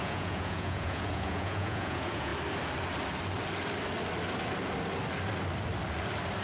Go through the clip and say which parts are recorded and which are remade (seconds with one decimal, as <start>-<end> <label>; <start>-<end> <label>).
0.0-2.3 remade; 2.3-6.4 recorded